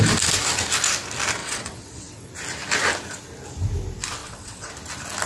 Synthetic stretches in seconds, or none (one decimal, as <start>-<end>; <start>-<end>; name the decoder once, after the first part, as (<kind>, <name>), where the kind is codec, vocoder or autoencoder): 1.4-2.3 (vocoder, WaveNeXt); 4.2-4.7

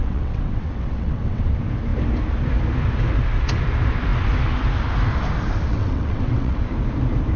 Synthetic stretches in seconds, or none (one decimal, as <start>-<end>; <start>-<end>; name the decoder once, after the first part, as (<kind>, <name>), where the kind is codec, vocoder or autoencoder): 0.0-1.5 (vocoder, WaveNeXt); 5.7-6.6

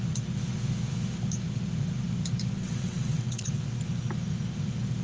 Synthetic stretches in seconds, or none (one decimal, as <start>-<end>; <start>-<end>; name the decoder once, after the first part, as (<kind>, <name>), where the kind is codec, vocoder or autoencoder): 2.6-3.5 (vocoder, WaveNeXt)

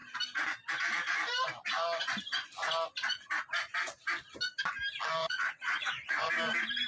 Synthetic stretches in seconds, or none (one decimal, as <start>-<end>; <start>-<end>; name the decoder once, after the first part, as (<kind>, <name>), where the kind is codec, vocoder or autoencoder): 5.2-6.3 (vocoder, WaveNeXt)

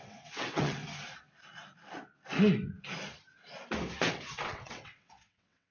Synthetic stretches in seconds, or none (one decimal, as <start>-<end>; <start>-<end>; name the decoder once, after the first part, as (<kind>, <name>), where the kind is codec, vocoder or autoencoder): 0.0-0.8 (vocoder, WaveNeXt); 4.1-5.7